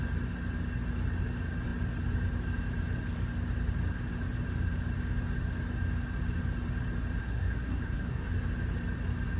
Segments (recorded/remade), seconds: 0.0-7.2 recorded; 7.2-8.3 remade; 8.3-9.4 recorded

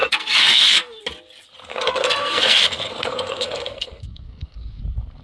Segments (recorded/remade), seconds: 0.0-1.0 remade; 1.0-1.7 recorded; 1.7-4.8 remade; 4.8-5.2 recorded

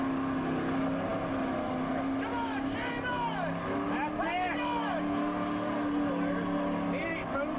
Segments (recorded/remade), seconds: 0.0-7.6 recorded

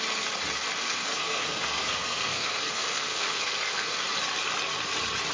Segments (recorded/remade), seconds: 0.0-0.8 recorded; 0.8-4.0 remade; 4.0-5.3 recorded

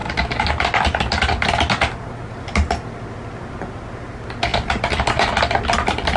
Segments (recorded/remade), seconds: 0.0-6.2 recorded

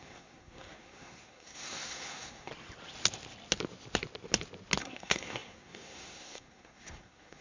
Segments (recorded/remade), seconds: 0.0-2.5 remade; 2.5-4.8 recorded; 4.8-7.4 remade